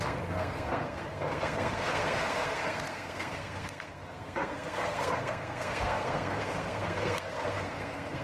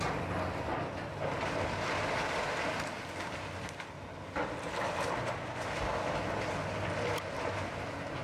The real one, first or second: second